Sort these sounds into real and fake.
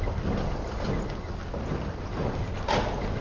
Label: real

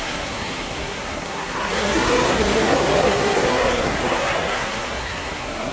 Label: fake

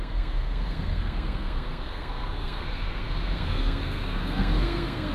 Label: fake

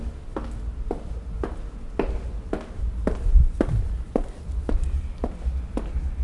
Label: real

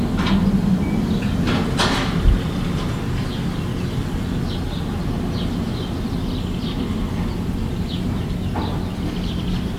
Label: real